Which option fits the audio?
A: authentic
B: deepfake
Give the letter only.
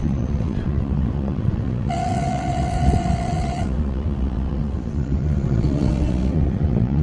B